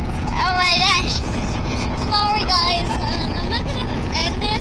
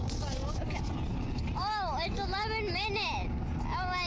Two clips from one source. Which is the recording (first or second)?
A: second